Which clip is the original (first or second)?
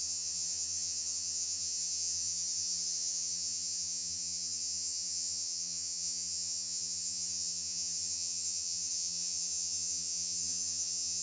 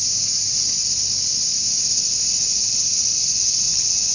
second